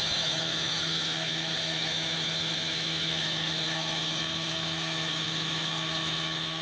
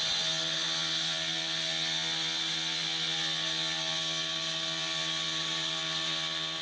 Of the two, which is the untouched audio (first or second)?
second